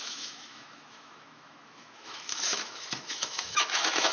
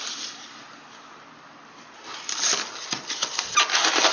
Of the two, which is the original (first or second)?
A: second